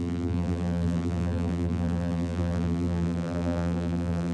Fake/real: fake